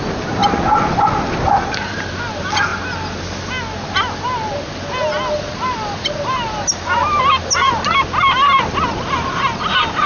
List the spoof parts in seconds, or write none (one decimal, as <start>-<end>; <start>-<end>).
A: none